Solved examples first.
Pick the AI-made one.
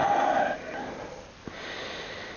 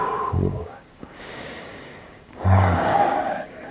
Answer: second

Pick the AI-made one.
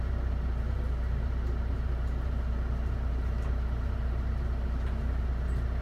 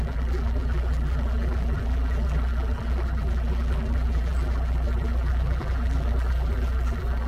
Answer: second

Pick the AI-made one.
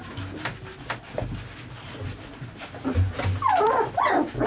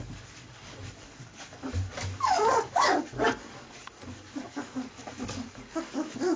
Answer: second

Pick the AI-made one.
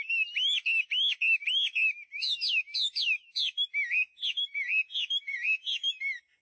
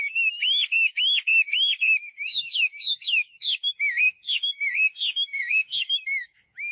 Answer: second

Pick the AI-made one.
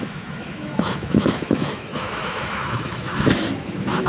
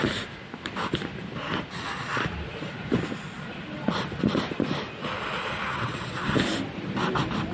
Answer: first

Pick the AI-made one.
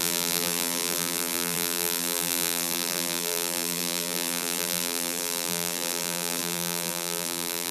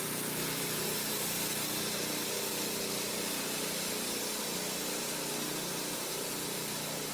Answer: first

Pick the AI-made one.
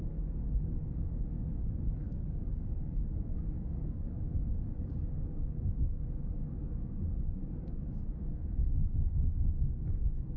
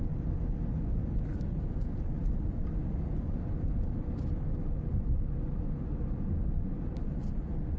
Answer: first